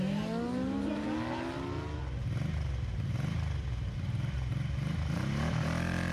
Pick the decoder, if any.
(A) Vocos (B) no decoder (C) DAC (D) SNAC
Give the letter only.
B